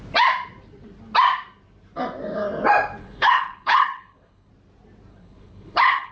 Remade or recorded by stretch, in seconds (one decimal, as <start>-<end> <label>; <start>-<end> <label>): 0.0-3.0 recorded; 3.0-4.5 remade; 4.5-5.1 recorded; 5.1-6.1 remade